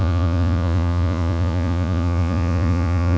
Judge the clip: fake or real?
fake